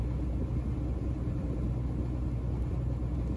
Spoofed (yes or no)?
no